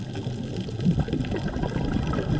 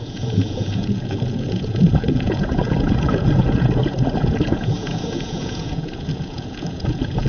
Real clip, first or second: first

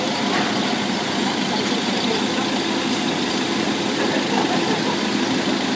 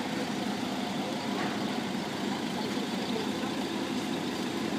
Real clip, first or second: first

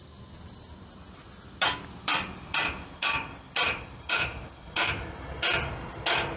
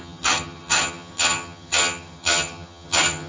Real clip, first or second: first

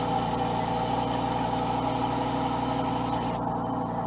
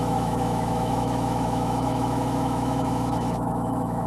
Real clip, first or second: first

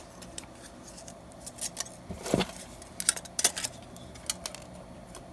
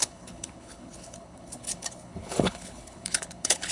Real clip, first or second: first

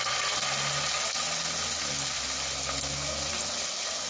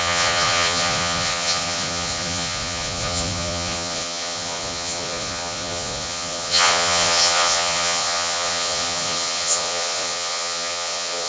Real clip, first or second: first